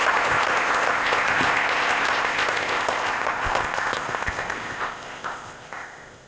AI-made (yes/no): yes